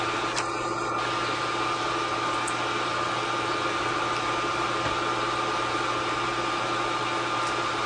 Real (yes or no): yes